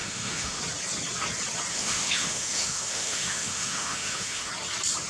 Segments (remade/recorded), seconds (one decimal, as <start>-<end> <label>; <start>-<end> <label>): 0.0-0.6 remade; 0.6-1.7 recorded; 1.7-4.5 remade; 4.5-5.1 recorded